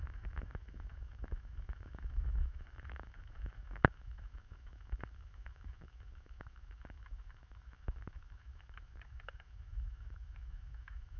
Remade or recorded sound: remade